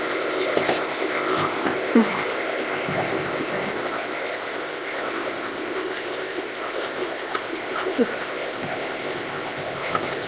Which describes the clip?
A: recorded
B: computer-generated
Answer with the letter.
B